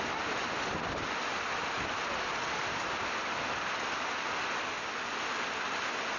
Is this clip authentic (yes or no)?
yes